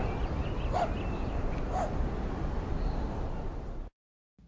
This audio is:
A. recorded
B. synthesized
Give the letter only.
A